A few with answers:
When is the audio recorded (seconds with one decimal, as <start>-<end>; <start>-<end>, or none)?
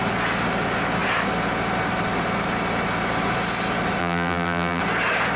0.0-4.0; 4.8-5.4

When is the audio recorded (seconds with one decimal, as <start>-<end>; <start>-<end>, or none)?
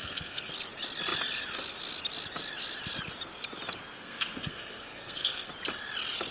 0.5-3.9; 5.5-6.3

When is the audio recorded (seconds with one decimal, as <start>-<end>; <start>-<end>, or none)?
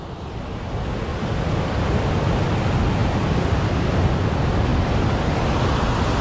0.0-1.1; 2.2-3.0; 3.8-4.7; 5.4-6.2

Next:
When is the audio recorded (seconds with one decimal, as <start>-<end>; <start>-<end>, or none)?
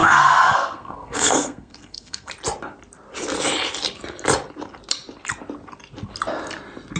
2.3-7.0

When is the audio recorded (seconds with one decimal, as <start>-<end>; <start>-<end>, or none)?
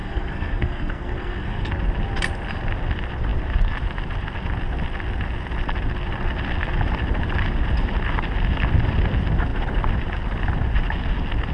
1.7-11.5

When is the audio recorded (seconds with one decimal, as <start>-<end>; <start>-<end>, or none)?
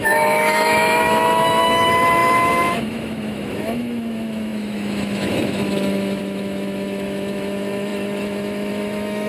none